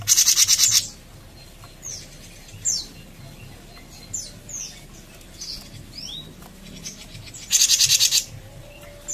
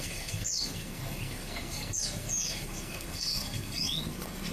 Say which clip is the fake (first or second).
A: second